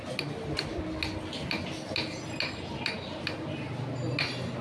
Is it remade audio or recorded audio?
recorded